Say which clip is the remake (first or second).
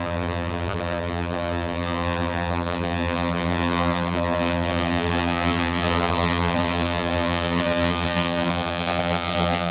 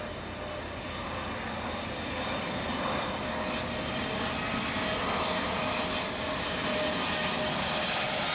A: first